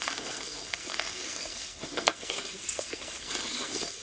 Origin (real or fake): fake